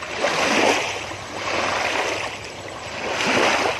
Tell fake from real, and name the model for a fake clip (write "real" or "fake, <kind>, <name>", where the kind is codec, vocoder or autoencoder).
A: real